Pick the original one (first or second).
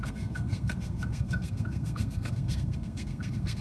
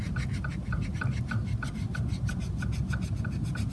second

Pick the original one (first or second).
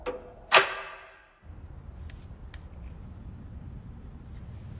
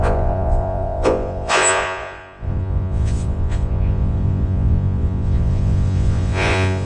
first